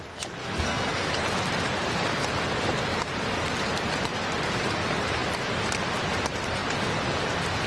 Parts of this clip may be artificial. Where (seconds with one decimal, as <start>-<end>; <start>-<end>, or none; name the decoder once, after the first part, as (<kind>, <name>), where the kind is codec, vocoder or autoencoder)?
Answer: 0.4-1.1 (codec, SNAC)